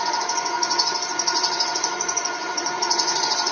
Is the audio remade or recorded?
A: remade